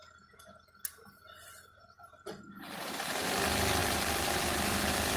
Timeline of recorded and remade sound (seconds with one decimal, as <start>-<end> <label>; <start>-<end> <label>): 0.0-3.8 recorded; 3.8-5.2 remade